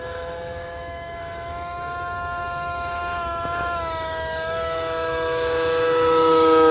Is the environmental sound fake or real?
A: fake